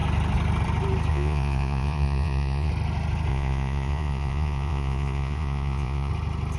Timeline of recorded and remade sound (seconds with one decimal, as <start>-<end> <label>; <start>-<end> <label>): 0.0-1.1 recorded; 1.1-2.7 remade; 2.7-3.3 recorded; 3.3-6.1 remade; 6.1-6.6 recorded